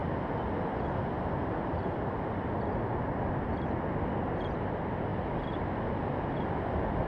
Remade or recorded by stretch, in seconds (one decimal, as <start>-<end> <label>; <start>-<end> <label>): 0.0-7.1 recorded